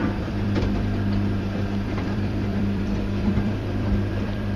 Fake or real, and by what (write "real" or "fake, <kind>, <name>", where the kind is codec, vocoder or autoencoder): fake, vocoder, BigVGAN v2